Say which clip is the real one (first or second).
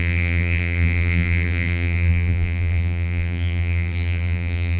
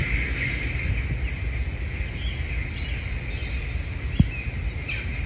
second